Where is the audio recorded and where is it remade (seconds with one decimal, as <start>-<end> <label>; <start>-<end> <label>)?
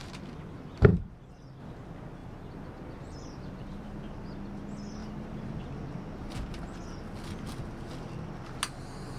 0.0-0.9 recorded; 0.9-1.6 remade; 1.6-2.2 recorded; 2.2-4.1 remade; 4.1-5.0 recorded; 5.0-5.6 remade; 5.6-9.2 recorded